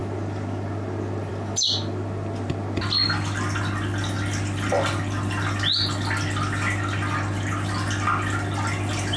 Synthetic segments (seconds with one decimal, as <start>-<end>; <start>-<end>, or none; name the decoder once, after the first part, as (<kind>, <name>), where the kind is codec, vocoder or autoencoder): none